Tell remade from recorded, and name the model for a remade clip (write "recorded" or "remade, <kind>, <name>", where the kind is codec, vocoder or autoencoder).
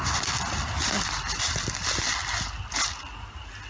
recorded